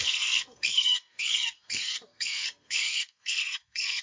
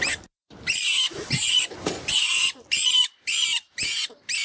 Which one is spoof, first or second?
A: first